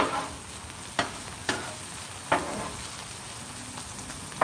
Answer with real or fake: real